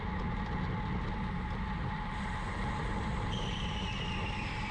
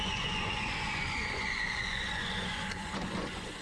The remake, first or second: second